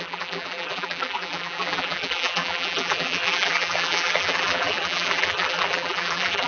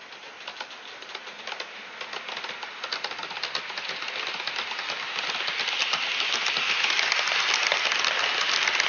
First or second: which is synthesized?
first